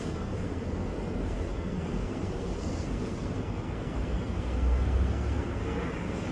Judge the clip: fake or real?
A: fake